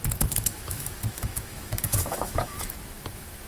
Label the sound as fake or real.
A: fake